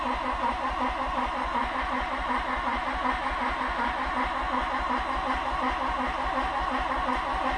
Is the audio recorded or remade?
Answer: recorded